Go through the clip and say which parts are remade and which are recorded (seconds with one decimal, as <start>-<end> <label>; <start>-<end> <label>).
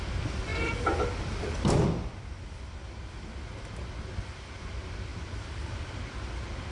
0.0-0.5 recorded; 0.5-2.9 remade; 2.9-5.1 recorded; 5.1-5.7 remade; 5.7-6.7 recorded